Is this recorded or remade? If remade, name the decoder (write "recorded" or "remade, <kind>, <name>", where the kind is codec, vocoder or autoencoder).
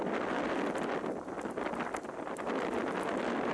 recorded